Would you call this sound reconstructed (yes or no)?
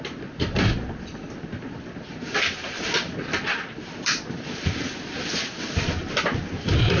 no